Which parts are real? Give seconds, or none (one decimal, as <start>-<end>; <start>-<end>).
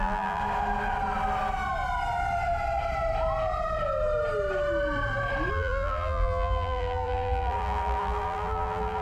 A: 0.4-5.5